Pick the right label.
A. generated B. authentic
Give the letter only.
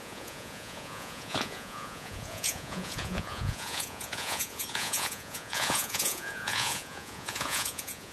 A